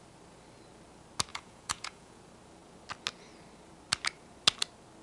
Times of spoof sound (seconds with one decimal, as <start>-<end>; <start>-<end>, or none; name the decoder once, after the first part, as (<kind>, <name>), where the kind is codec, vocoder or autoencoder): 1.3-2.2 (vocoder, Vocos)